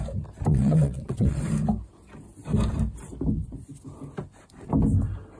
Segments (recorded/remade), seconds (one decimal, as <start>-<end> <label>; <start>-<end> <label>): 0.0-0.5 recorded; 0.5-1.4 remade; 1.4-5.4 recorded